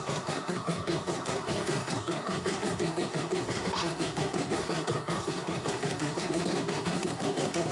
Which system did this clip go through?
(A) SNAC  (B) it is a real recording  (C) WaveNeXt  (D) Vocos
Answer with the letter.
A